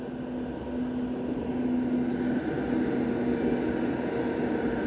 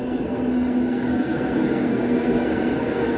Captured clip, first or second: first